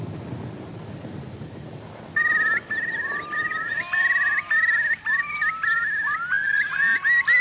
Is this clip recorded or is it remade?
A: recorded